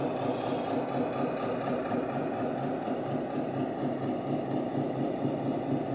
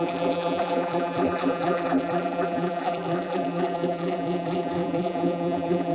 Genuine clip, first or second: first